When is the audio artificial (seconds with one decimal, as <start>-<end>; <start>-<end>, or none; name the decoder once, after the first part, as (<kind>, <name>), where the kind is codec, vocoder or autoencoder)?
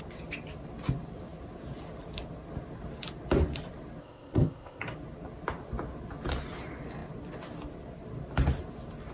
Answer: 4.0-4.8 (codec, ZipCodec)